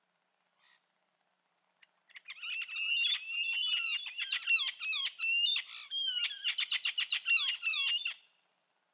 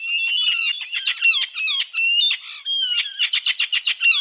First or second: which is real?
second